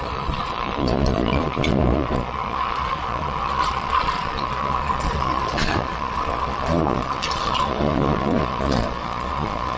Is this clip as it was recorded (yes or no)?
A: no